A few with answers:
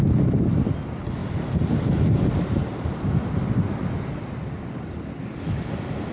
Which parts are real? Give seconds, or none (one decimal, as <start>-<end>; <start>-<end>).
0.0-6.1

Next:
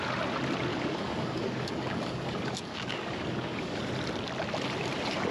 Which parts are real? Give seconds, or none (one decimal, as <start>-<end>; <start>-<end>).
0.0-0.7; 3.8-5.3

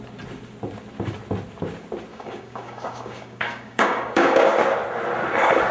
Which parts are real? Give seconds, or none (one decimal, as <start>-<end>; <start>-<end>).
0.0-2.1; 4.5-5.7